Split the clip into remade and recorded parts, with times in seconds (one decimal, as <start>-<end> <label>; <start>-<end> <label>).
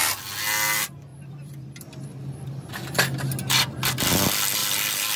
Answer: 0.0-1.1 recorded; 1.1-2.7 remade; 2.7-4.6 recorded; 4.6-5.2 remade